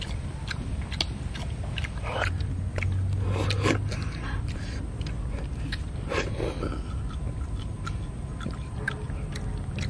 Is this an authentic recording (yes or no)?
yes